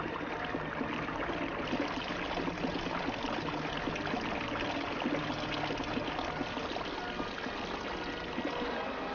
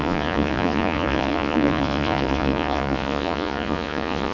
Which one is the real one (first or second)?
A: first